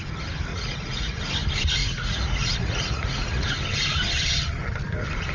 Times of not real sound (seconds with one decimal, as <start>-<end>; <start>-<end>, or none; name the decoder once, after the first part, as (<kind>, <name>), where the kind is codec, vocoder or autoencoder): 0.5-1.2 (vocoder, Vocos); 1.8-3.5